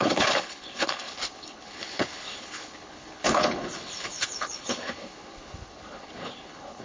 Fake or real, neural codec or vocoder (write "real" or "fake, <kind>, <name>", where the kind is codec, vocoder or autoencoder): fake, codec, HILCodec